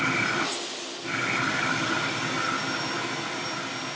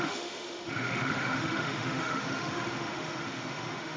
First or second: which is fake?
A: second